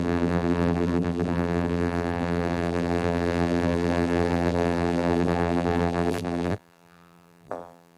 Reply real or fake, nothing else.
fake